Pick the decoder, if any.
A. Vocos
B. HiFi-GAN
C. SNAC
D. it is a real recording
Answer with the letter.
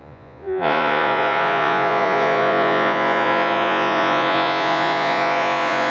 A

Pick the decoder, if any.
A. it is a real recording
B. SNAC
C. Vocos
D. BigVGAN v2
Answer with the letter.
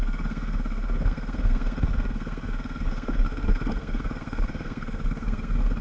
B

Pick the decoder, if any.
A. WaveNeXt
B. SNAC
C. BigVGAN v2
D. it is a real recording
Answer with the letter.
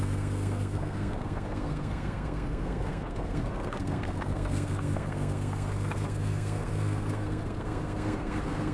B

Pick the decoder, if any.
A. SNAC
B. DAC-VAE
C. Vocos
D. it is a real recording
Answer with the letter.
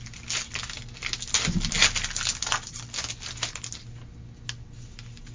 D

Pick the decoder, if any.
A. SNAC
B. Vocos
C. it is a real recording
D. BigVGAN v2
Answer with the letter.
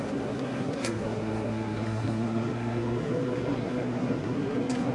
A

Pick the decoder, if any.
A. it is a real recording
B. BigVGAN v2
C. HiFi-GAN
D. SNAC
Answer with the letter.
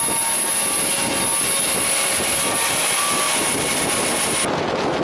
A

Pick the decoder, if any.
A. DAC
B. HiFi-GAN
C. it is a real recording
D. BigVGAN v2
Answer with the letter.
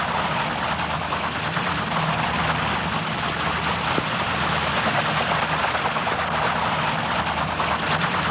C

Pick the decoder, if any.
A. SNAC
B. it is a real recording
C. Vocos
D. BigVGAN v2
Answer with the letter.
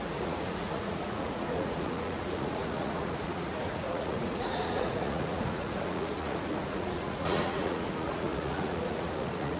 C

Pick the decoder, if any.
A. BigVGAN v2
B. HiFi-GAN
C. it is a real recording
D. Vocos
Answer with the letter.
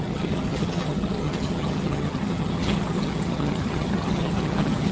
B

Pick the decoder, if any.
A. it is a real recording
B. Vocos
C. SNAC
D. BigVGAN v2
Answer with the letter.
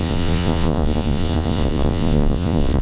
B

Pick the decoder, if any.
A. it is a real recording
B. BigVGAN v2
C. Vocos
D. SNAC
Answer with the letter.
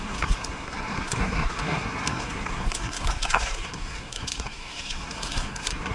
D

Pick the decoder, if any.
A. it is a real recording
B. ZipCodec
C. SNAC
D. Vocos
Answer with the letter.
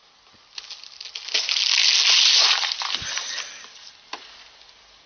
A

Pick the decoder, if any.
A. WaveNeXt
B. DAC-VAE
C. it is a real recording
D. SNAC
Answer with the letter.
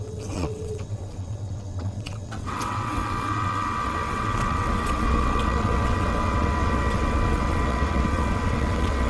A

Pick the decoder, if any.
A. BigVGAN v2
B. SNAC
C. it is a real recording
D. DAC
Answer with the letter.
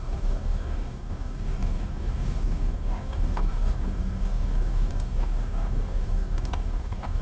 D